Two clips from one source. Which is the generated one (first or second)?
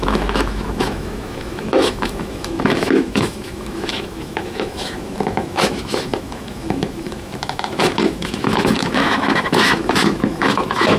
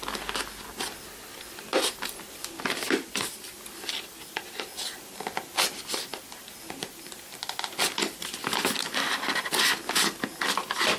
first